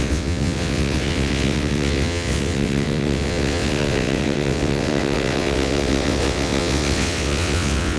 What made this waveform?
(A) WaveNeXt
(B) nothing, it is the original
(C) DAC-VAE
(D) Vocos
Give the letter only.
A